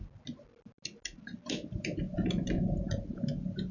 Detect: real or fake real